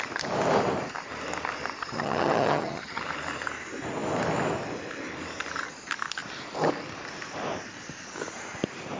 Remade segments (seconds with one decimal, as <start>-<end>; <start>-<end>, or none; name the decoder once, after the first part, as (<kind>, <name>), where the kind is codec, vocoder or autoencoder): 1.8-3.0 (vocoder, HiFi-GAN)